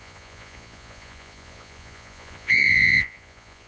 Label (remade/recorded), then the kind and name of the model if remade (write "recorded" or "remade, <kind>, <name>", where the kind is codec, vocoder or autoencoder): remade, vocoder, Vocos